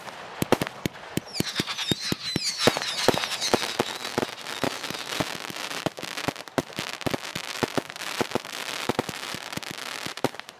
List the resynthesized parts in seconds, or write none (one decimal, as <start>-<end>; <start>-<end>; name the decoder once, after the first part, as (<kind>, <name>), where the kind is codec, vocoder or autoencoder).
7.3-10.6 (vocoder, BigVGAN v2)